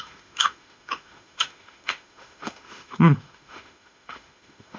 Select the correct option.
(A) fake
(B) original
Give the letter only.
A